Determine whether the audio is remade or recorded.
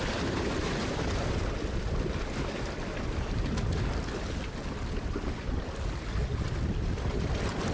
recorded